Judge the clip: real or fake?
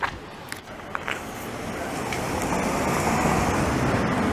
real